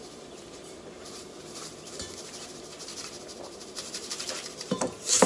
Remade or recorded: remade